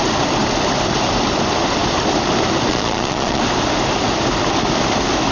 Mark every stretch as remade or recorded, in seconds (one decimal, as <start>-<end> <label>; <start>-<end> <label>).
0.0-2.7 recorded; 2.7-3.4 remade; 3.4-5.3 recorded

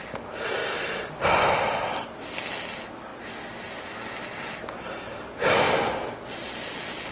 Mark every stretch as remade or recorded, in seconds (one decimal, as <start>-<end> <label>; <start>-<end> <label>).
0.0-7.1 recorded

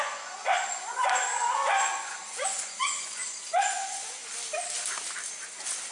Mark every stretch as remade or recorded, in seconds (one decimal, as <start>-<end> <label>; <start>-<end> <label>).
0.0-4.2 remade; 4.2-5.9 recorded

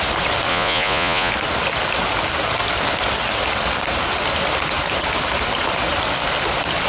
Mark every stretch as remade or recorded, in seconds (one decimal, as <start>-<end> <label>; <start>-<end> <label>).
0.0-0.5 recorded; 0.5-1.3 remade; 1.3-6.9 recorded

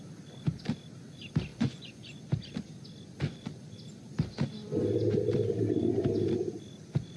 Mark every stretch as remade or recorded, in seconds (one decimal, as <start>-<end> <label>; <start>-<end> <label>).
0.0-1.5 recorded; 1.5-2.2 remade; 2.2-7.2 recorded

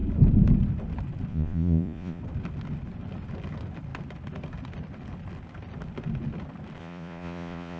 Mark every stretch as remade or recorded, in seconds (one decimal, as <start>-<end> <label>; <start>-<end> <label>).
0.0-1.3 recorded; 1.3-2.2 remade; 2.2-6.8 recorded; 6.8-7.8 remade

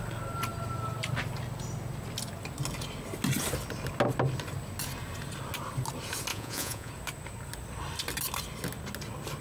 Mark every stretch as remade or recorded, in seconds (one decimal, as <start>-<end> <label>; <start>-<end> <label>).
0.0-6.3 recorded; 6.3-6.9 remade; 6.9-9.4 recorded